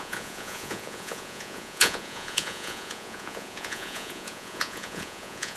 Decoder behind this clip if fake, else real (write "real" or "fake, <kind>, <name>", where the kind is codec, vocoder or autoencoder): fake, vocoder, Vocos